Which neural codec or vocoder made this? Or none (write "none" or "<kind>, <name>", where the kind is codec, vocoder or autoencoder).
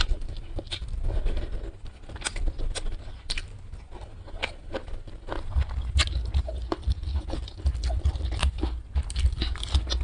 none